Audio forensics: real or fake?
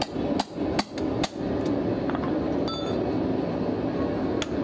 real